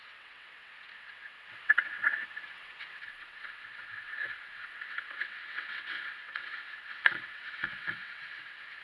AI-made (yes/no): yes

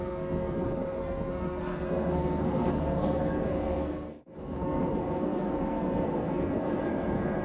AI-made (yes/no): yes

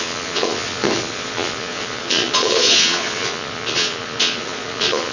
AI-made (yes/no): yes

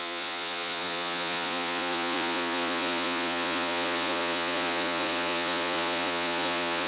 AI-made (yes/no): yes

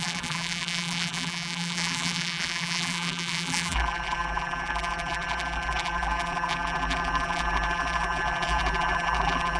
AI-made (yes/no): yes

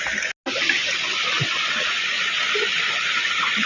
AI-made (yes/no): no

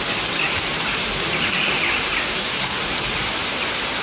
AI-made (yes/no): yes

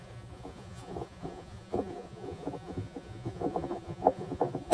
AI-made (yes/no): yes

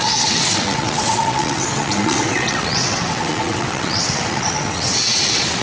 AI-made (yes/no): yes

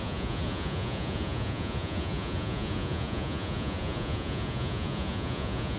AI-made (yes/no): yes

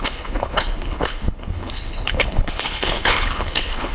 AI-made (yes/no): yes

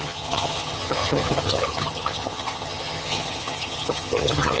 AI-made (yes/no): yes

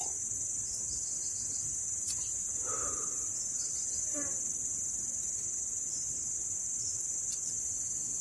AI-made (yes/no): yes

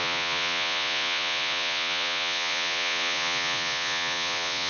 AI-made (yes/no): yes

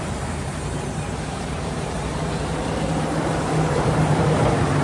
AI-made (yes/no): yes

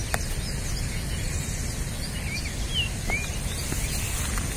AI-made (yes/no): no